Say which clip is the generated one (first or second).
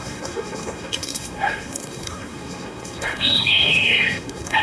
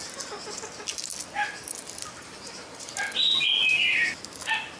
first